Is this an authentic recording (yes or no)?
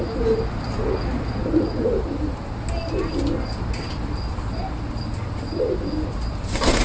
yes